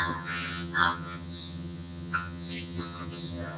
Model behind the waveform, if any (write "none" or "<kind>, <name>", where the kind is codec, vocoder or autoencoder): vocoder, HiFi-GAN